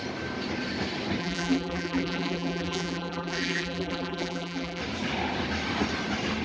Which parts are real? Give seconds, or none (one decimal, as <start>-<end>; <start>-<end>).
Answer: 0.0-1.2; 4.8-6.4